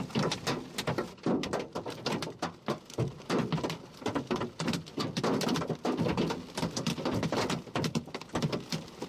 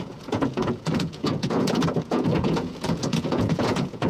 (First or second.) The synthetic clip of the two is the second